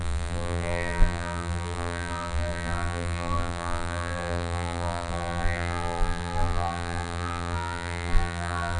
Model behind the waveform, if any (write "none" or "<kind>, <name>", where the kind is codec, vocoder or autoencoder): vocoder, BigVGAN v2